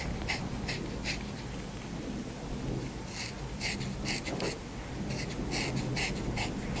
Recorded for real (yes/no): yes